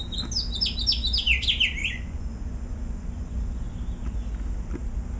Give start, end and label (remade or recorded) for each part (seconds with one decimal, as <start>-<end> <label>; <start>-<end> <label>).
0.0-1.8 recorded; 1.8-3.6 remade; 3.6-5.2 recorded